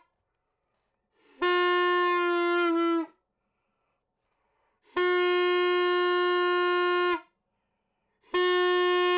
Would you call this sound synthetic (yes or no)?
no